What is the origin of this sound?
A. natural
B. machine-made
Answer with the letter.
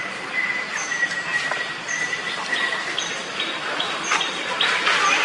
B